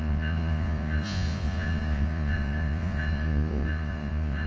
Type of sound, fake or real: fake